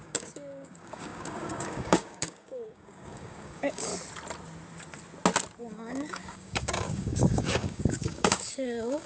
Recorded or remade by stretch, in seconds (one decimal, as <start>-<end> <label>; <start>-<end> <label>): 0.0-3.9 remade; 3.9-5.6 recorded; 5.6-9.1 remade

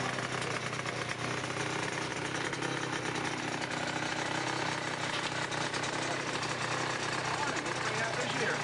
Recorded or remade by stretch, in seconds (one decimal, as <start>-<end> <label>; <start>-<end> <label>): 0.0-8.6 recorded

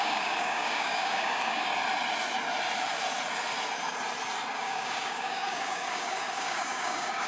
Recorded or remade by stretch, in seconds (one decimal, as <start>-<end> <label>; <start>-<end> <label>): 0.0-1.7 remade; 1.7-4.5 recorded; 4.5-7.3 remade

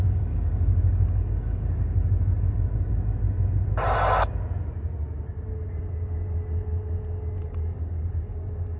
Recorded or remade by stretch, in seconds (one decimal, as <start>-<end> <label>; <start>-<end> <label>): 0.0-2.9 remade; 2.9-7.4 recorded; 7.4-8.8 remade

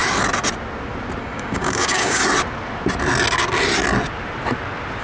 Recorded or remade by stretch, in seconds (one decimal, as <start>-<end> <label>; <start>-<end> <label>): 0.0-1.2 recorded; 1.2-2.2 remade; 2.2-5.0 recorded

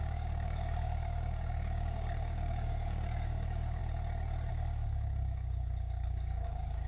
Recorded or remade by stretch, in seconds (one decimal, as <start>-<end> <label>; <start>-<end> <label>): 0.0-3.8 remade; 3.8-4.5 recorded; 4.5-6.9 remade